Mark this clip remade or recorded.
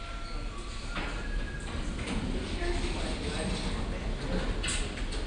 recorded